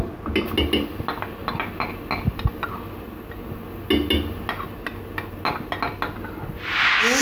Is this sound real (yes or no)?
yes